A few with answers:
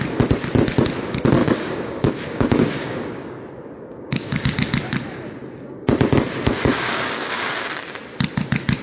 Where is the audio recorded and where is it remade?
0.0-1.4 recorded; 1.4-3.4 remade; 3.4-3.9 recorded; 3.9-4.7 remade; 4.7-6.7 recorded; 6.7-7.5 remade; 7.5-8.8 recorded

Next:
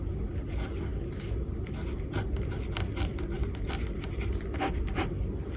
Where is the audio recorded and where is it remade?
0.0-5.6 recorded

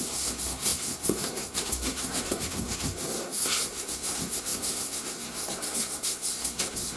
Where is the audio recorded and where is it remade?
0.0-7.0 remade

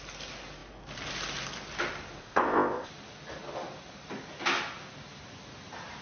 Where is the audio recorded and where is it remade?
0.0-2.2 recorded; 2.2-2.9 remade; 2.9-6.0 recorded

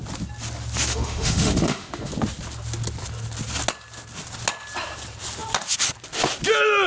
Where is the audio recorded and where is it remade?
0.0-0.9 recorded; 0.9-2.1 remade; 2.1-6.9 recorded

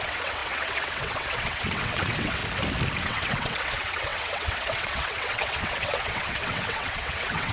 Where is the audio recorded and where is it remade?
0.0-2.4 remade; 2.4-3.0 recorded; 3.0-7.5 remade